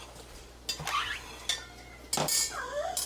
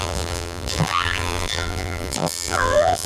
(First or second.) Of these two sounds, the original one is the first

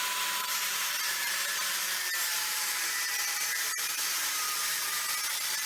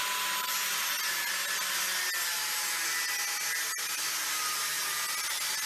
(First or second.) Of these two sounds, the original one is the second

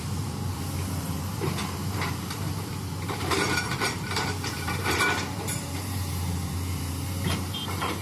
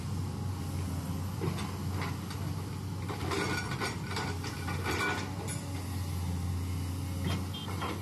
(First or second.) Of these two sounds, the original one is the second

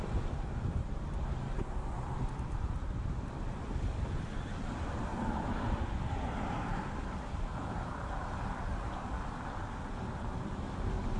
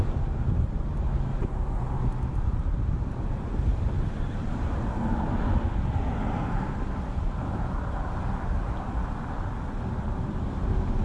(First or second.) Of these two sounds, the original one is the second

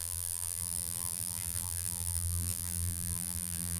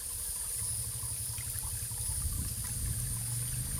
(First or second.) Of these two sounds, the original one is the second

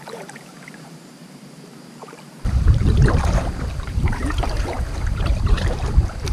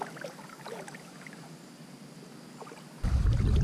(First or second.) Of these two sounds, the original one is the second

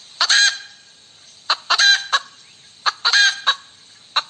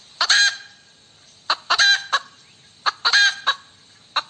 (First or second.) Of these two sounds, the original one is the second